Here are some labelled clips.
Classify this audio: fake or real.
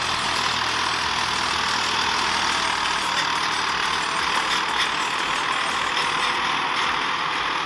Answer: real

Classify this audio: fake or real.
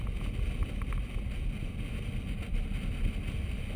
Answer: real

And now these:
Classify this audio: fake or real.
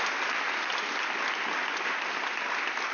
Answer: real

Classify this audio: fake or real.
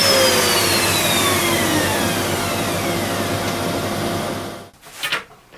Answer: real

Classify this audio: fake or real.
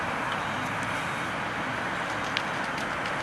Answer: real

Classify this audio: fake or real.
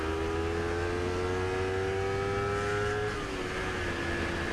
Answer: real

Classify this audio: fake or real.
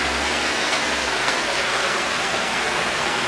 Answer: fake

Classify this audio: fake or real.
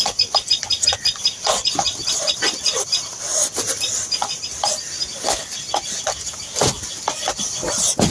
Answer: real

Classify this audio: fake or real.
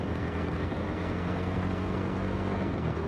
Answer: fake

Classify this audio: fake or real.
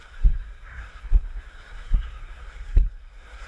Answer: fake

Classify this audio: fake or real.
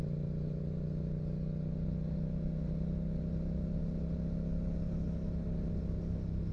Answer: real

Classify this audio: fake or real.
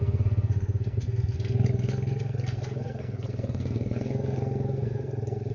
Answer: fake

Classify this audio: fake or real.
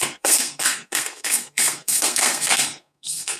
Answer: fake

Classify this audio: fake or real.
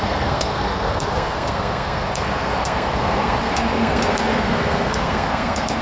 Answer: fake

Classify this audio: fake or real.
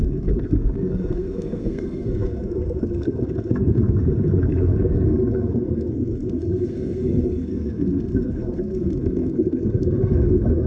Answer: fake